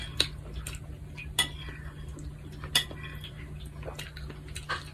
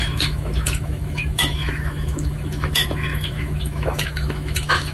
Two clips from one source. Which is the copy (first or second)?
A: second